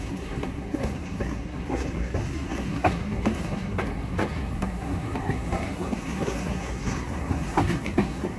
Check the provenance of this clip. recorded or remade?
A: remade